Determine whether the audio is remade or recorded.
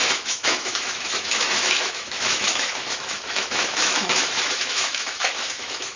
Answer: remade